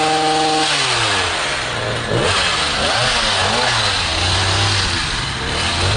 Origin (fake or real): real